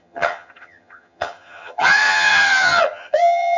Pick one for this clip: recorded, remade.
remade